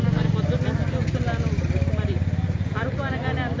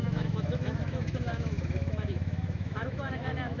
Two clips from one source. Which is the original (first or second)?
first